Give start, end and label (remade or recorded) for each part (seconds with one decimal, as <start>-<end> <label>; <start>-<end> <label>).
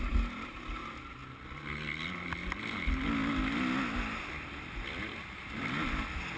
0.0-6.4 recorded